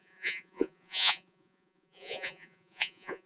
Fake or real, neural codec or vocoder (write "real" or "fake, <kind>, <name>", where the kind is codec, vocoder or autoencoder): fake, vocoder, Vocos